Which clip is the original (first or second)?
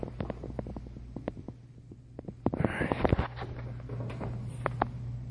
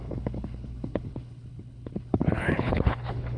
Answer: first